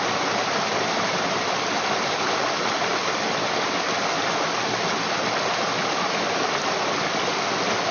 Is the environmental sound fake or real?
real